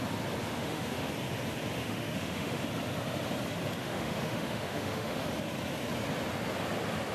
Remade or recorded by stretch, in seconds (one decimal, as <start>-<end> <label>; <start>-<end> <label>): 0.0-0.5 recorded; 0.5-1.1 remade; 1.1-1.8 recorded; 1.8-2.6 remade; 2.6-3.8 recorded; 3.8-5.3 remade; 5.3-7.1 recorded